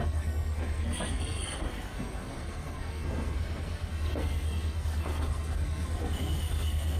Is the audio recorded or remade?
remade